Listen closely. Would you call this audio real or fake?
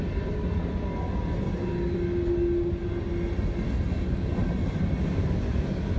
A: real